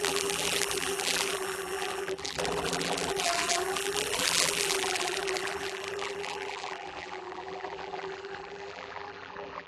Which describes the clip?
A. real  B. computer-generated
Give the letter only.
B